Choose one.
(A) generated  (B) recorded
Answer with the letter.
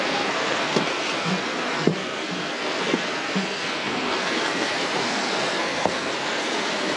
A